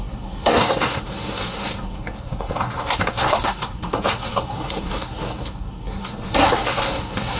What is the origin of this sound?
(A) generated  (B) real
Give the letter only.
A